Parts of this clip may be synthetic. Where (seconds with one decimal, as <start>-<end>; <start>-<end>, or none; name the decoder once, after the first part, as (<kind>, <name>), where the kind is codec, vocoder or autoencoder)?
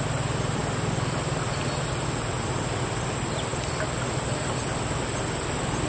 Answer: none